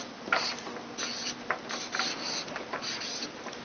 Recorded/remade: recorded